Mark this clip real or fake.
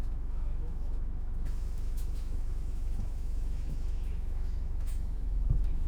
fake